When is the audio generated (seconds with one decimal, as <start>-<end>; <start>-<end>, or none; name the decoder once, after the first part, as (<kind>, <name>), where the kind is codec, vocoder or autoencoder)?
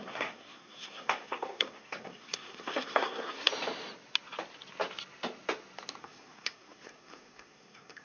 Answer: 0.0-3.5 (codec, SNAC); 6.0-8.0